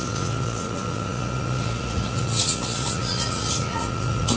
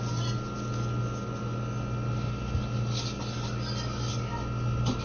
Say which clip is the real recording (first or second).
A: second